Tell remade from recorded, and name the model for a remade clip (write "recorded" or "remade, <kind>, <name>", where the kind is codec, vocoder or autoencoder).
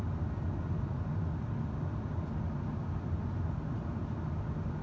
recorded